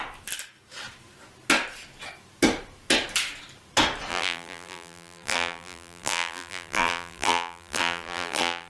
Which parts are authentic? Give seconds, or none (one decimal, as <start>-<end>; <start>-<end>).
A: 0.0-4.1